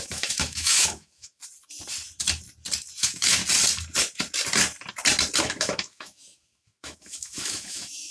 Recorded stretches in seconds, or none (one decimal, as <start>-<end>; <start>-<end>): 1.4-3.0; 3.4-5.4